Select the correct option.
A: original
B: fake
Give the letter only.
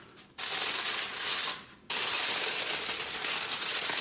A